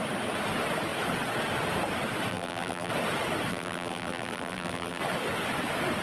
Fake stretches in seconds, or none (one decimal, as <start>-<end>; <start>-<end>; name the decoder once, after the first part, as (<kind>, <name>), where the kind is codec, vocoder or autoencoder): 2.3-2.9 (vocoder, BigVGAN v2); 3.5-5.0